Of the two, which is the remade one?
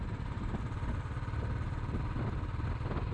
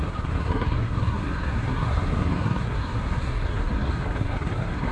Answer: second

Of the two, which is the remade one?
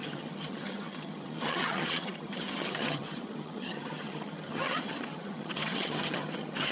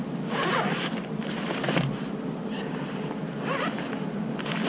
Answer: first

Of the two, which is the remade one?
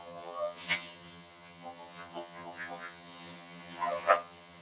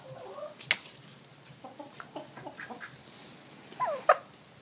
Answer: first